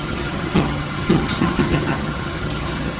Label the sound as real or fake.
fake